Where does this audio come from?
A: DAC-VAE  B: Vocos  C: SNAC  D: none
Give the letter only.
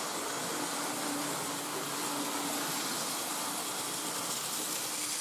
D